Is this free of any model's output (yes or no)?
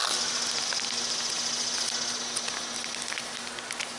yes